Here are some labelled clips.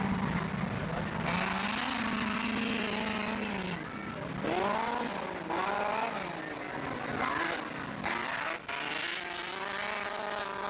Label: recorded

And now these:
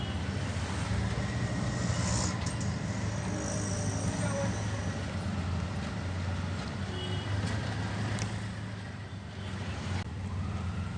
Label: recorded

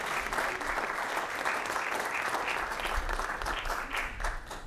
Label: recorded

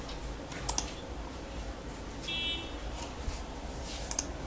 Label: recorded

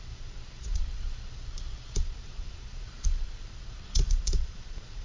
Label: remade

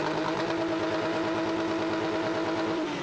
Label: recorded